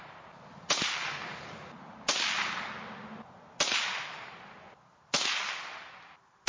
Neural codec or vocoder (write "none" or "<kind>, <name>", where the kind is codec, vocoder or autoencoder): none